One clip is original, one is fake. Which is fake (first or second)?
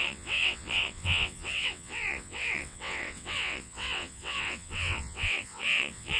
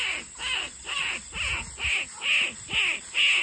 first